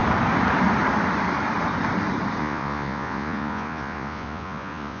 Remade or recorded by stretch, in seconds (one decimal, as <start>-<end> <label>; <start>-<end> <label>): 0.0-2.4 recorded; 2.4-5.0 remade